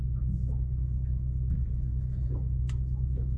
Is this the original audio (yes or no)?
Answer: no